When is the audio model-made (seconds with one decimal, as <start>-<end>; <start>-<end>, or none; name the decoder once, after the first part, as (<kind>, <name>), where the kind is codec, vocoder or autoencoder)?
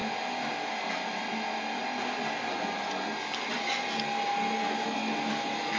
none